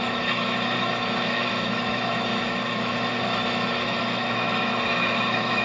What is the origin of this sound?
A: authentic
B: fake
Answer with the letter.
B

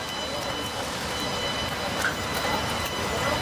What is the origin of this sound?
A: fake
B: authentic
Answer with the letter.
B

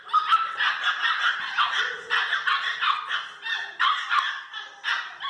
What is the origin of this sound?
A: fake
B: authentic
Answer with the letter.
B